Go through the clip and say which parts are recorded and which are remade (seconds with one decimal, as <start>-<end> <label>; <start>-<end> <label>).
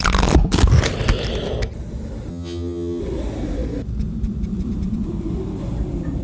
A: 0.0-2.3 recorded; 2.3-3.0 remade; 3.0-6.2 recorded